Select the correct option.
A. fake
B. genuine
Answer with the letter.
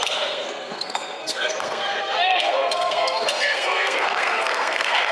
A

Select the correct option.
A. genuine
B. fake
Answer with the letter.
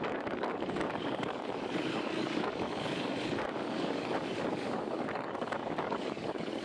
B